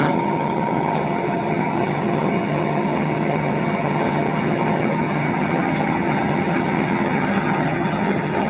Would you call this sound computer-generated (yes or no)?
yes